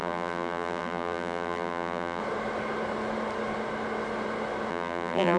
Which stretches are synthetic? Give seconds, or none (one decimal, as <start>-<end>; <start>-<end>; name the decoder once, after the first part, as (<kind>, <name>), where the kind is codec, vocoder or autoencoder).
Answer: 0.0-2.2 (vocoder, BigVGAN v2); 4.7-5.4